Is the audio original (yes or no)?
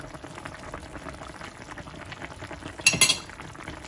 yes